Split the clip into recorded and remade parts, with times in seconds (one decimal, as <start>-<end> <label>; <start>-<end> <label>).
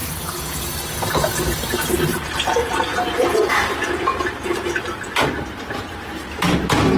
0.0-0.6 remade; 0.6-2.6 recorded; 2.6-4.8 remade; 4.8-7.0 recorded